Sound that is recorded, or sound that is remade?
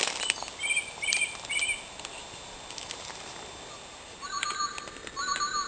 recorded